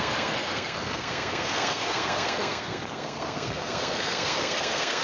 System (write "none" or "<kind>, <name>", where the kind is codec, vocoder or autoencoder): codec, SNAC